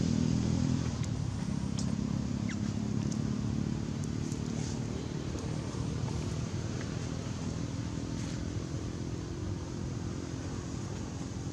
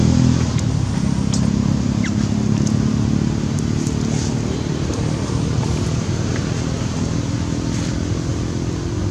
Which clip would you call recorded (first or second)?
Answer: second